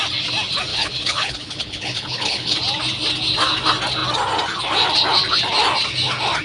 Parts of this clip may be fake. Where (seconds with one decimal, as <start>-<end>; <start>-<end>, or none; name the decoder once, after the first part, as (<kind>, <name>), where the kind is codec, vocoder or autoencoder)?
0.7-2.6 (codec, HILCodec)